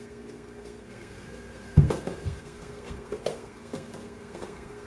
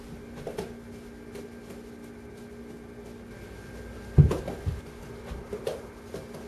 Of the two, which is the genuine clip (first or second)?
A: second